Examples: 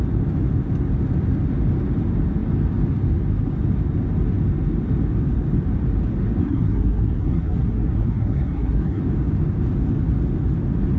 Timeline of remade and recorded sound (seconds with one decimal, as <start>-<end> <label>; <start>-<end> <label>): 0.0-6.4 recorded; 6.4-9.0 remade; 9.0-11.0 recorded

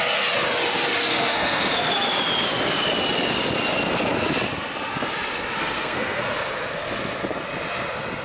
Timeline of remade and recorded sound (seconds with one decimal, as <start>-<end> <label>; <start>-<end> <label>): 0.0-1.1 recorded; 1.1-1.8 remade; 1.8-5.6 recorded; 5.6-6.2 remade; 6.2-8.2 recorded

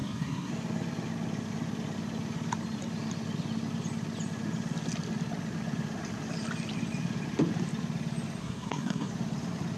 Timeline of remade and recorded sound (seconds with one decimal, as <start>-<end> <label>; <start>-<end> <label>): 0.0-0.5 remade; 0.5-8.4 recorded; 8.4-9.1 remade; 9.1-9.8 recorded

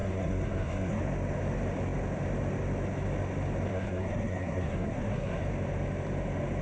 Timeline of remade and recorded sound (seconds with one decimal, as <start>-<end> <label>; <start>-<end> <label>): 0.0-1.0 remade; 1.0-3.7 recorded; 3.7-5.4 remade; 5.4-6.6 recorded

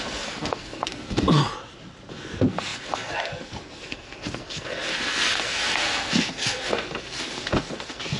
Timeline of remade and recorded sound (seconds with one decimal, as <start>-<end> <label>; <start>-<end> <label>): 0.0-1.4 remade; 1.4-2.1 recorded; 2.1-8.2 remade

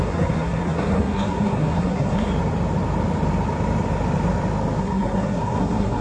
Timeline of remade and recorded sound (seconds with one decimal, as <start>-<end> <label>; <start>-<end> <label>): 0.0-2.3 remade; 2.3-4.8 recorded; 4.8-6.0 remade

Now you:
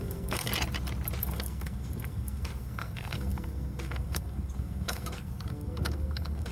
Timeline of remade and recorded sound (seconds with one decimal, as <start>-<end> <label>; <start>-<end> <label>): 0.0-0.5 remade; 0.5-1.2 recorded; 1.2-6.5 remade